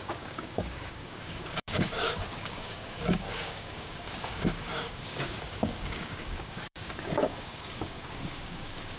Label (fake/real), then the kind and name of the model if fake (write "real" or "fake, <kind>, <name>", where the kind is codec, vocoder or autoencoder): fake, codec, DAC